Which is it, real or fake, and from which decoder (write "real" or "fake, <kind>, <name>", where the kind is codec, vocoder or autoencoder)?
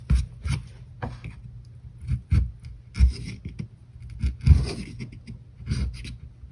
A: real